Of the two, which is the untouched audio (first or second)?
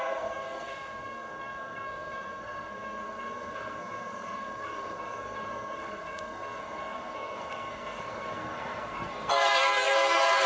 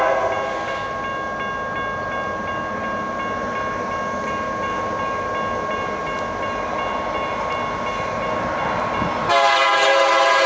second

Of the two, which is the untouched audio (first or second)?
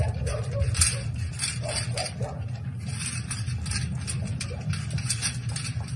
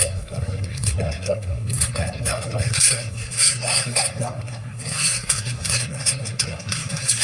first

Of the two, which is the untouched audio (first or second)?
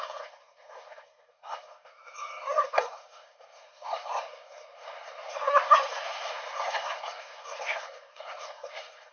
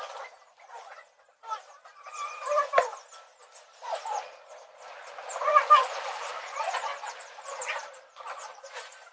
second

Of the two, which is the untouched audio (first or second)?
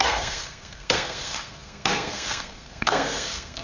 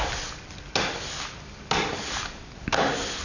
second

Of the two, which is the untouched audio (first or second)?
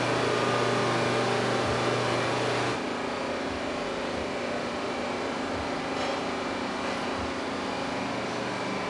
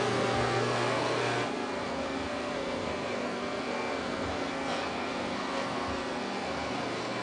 first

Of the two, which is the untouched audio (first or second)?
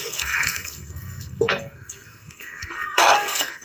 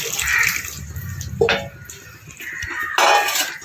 second